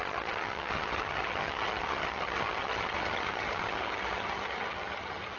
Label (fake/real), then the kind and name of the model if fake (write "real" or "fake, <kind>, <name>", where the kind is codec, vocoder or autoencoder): fake, vocoder, HiFi-GAN